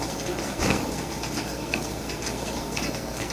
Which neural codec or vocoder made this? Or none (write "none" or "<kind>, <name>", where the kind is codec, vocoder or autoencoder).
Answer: codec, SNAC